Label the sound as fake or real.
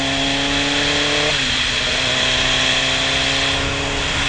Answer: real